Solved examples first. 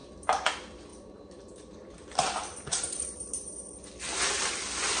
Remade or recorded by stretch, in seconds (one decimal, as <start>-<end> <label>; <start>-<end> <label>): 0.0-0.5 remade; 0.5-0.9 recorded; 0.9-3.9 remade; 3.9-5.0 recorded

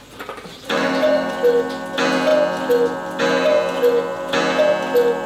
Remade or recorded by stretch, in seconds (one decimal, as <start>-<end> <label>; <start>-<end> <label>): 0.0-0.5 recorded; 0.5-1.3 remade; 1.3-5.3 recorded

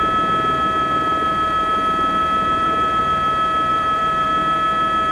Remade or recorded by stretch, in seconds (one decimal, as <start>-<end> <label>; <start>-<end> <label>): 0.0-2.2 recorded; 2.2-3.0 remade; 3.0-3.7 recorded; 3.7-4.3 remade; 4.3-5.1 recorded